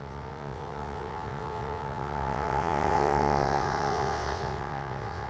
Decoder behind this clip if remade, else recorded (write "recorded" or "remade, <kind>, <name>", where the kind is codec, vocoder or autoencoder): remade, vocoder, WaveNeXt